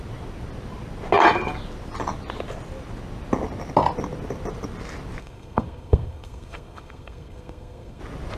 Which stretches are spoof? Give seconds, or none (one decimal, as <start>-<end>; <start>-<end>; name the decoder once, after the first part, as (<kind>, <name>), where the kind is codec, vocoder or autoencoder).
5.2-8.0 (codec, SNAC)